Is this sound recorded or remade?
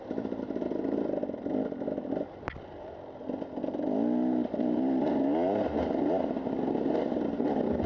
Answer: recorded